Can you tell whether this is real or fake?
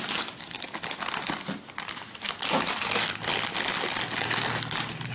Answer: real